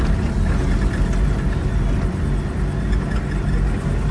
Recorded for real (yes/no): yes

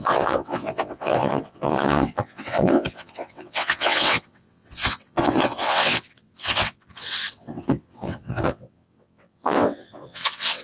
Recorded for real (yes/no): no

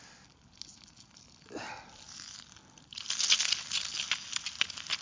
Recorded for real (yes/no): yes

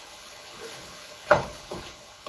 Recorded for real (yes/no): no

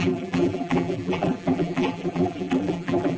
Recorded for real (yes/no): no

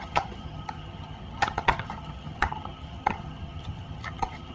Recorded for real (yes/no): no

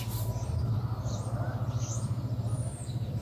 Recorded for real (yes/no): no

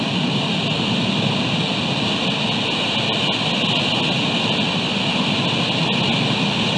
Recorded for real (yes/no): yes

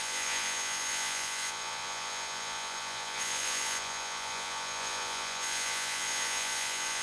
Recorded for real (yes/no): no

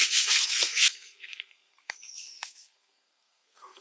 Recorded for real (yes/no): no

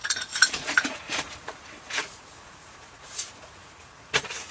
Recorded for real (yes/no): no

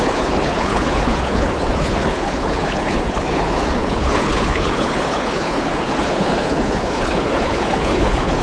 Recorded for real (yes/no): no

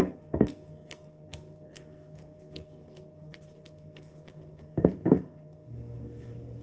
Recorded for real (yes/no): no